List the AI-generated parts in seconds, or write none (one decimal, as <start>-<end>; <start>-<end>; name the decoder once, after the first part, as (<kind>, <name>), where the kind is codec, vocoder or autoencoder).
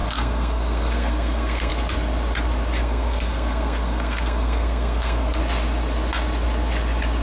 0.0-1.7 (codec, SNAC); 2.8-5.4